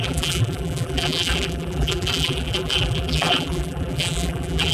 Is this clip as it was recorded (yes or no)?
no